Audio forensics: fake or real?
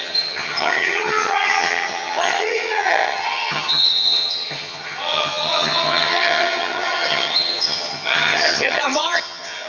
fake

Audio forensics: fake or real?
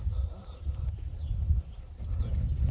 real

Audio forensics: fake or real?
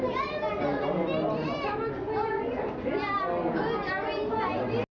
real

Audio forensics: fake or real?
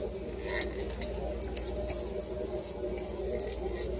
real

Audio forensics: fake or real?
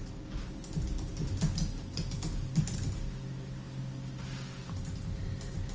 real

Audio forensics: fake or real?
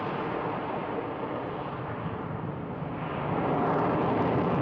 real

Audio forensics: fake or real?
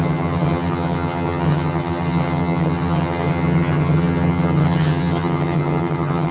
fake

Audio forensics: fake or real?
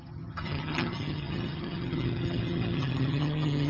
fake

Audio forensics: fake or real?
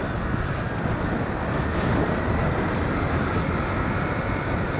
real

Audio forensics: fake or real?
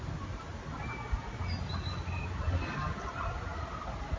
real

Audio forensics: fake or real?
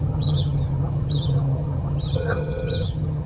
fake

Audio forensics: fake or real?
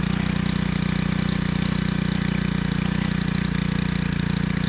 real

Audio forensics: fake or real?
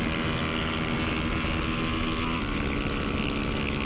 real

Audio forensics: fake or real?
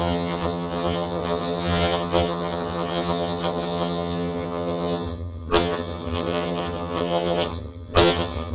fake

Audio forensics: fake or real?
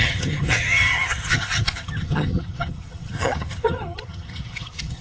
fake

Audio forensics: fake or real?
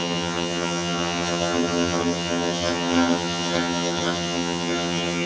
fake